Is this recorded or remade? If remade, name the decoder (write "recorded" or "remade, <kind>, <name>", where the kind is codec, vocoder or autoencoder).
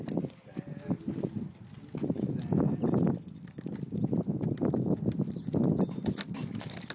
recorded